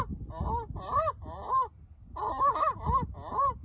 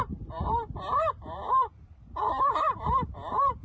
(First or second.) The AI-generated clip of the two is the second